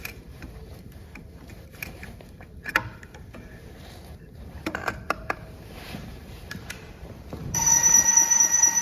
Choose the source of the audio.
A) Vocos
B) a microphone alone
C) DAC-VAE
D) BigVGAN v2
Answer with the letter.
D